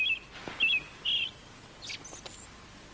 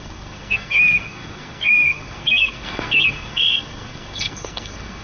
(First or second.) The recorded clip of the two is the first